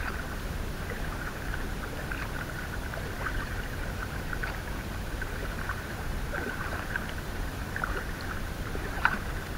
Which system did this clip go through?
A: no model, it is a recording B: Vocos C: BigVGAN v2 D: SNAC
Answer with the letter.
C